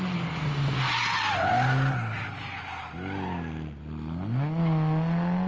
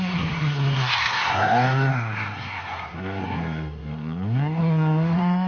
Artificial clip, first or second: second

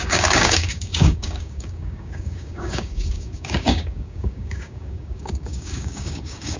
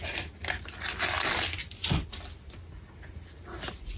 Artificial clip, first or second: first